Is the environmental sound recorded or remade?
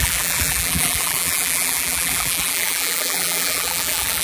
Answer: remade